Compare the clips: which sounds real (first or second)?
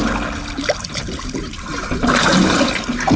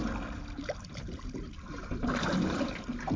first